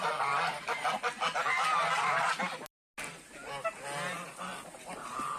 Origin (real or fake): real